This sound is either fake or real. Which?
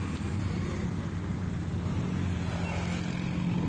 real